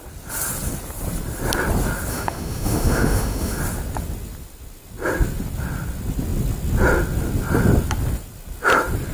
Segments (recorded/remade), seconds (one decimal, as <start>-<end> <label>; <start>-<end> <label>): 0.0-2.1 recorded; 2.1-3.6 remade; 3.6-9.1 recorded